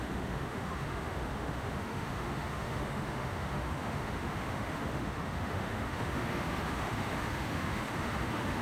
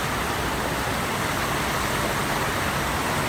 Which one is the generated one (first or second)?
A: first